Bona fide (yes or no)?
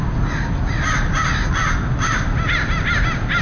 yes